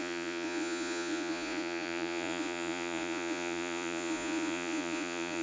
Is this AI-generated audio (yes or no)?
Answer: yes